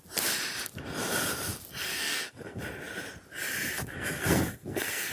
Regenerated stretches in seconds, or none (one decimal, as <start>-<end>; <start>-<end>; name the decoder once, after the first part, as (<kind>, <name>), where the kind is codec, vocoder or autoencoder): 1.8-2.6 (codec, SNAC); 3.8-5.1